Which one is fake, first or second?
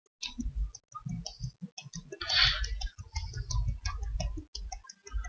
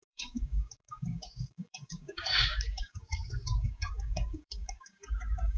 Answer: second